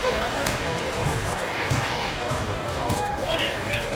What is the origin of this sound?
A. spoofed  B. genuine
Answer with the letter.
A